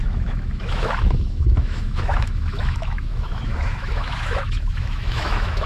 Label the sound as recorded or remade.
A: remade